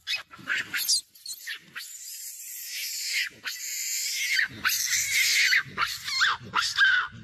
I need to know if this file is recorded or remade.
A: recorded